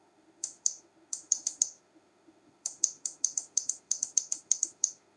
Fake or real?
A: fake